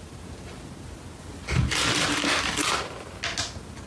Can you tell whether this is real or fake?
real